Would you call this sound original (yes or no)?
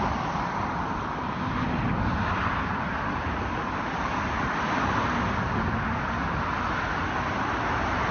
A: yes